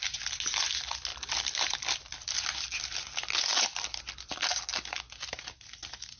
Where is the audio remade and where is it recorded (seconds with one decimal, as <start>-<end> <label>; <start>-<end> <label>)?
0.0-1.1 recorded; 1.1-2.3 remade; 2.3-3.5 recorded; 3.5-4.3 remade; 4.3-6.2 recorded

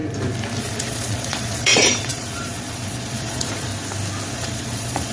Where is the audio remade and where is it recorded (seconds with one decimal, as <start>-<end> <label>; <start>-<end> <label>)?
0.0-0.6 recorded; 0.6-3.7 remade; 3.7-4.3 recorded; 4.3-5.1 remade

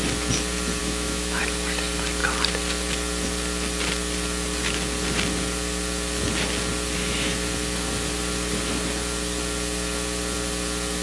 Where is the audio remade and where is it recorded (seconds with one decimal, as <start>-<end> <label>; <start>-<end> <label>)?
0.0-0.8 recorded; 0.8-1.4 remade; 1.4-11.0 recorded

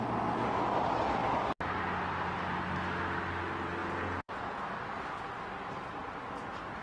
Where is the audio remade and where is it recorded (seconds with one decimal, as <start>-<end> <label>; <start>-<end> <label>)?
0.0-3.8 recorded; 3.8-4.6 remade; 4.6-6.8 recorded